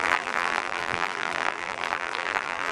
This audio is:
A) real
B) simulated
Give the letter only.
B